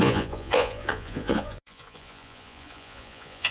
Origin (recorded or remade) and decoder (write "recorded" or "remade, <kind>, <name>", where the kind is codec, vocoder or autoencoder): remade, vocoder, Vocos